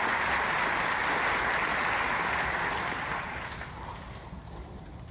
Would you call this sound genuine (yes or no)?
yes